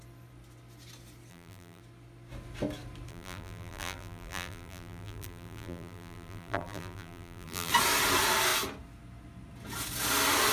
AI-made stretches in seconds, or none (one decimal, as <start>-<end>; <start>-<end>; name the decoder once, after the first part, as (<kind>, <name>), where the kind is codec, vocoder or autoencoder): 1.3-1.8 (vocoder, BigVGAN v2); 3.1-7.7